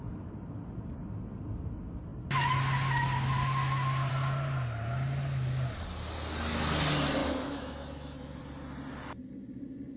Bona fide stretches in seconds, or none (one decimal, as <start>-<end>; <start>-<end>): 0.0-7.2; 8.4-10.0